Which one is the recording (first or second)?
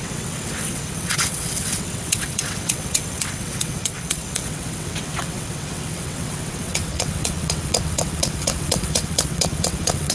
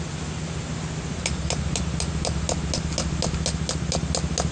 second